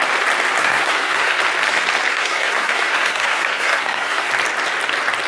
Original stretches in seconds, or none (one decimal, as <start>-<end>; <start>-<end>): 0.0-0.6; 1.4-2.1; 4.3-5.3